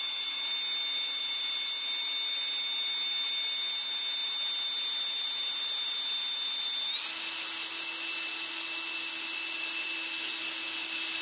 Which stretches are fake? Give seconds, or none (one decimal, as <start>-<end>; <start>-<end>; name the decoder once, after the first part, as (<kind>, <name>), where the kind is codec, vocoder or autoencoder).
none